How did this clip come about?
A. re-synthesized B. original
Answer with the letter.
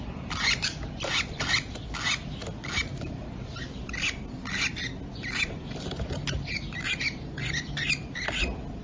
B